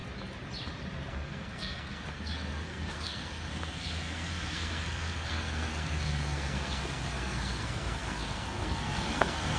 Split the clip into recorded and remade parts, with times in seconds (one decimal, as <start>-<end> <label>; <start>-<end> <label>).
0.0-1.1 recorded; 1.1-9.6 remade